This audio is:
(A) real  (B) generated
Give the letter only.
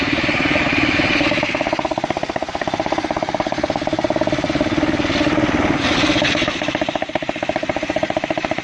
A